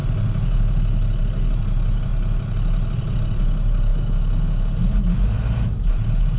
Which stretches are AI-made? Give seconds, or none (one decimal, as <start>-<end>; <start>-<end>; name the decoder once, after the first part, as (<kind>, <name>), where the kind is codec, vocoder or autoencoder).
none